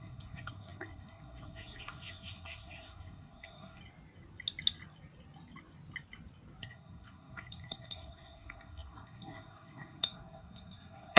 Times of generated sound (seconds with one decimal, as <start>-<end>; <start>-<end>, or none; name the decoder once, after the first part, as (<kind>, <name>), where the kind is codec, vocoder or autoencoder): 0.0-3.8 (codec, SNAC); 6.6-11.2